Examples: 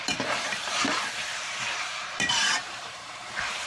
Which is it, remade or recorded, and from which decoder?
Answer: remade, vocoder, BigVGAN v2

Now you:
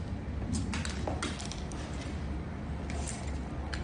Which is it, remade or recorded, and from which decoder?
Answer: recorded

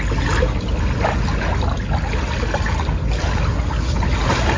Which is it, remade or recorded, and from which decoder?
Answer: recorded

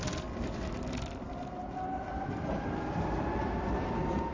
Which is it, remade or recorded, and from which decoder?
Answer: recorded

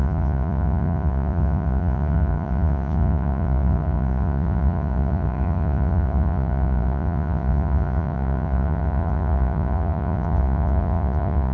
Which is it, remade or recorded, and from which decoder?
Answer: remade, vocoder, Vocos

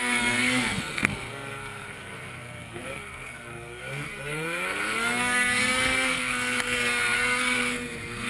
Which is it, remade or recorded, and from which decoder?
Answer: remade, codec, SNAC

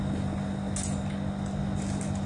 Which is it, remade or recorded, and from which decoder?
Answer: recorded